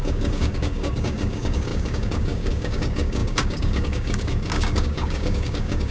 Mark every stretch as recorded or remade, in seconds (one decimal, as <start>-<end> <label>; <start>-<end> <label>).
0.0-5.9 remade